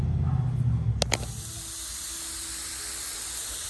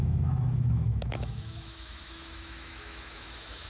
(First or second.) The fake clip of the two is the second